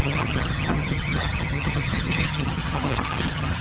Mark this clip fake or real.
fake